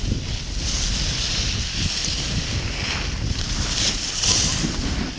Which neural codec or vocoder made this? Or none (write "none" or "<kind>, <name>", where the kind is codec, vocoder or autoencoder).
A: none